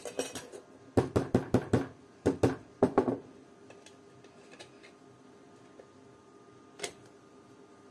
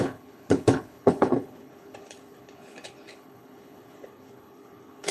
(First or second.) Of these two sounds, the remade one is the second